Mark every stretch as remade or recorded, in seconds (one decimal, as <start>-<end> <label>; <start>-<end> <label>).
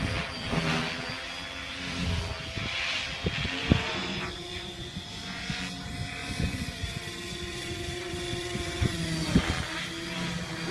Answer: 0.0-3.6 recorded; 3.6-5.6 remade; 5.6-6.2 recorded; 6.2-9.3 remade; 9.3-10.7 recorded